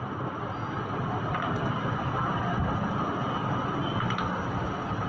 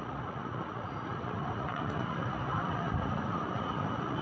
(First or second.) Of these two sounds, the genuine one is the first